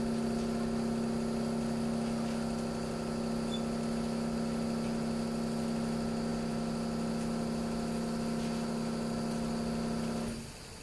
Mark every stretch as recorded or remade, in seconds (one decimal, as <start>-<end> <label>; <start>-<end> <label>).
0.0-10.8 recorded